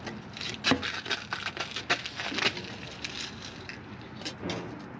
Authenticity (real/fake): real